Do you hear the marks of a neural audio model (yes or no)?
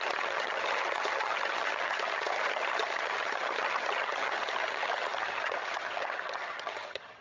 yes